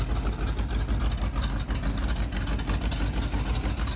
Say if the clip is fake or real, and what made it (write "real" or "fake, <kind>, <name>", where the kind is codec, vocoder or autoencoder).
real